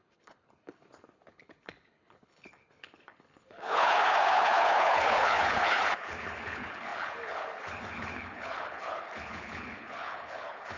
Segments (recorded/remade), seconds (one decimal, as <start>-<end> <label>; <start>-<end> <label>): 0.0-10.8 remade